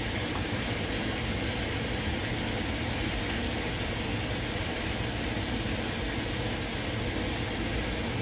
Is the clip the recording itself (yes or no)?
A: yes